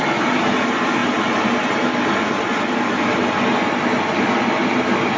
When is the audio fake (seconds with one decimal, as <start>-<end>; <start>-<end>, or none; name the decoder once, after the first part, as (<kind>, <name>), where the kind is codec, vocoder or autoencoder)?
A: 0.0-1.0 (vocoder, BigVGAN v2); 4.1-5.2